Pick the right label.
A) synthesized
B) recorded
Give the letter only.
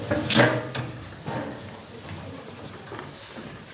B